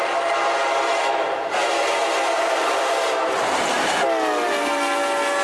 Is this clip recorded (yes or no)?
yes